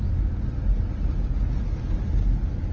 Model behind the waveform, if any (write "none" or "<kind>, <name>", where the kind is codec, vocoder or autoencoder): none